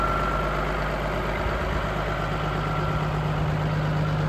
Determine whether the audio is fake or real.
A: real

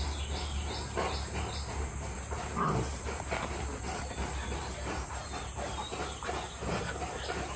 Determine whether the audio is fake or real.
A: real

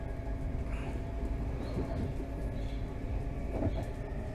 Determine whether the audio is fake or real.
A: real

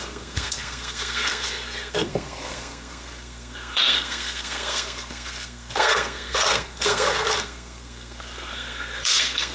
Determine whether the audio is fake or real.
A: fake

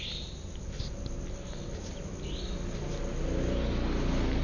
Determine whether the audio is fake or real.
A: real